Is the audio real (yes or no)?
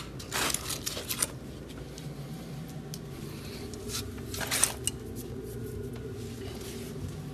yes